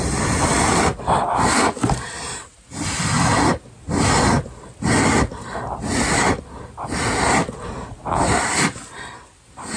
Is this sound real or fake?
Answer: real